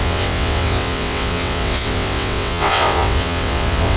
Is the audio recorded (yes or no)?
no